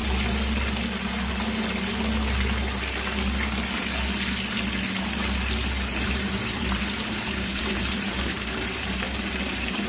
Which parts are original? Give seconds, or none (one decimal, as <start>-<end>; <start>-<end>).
0.0-5.9